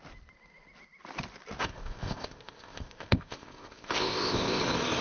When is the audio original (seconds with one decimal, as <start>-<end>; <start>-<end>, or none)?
0.0-1.6; 4.6-5.0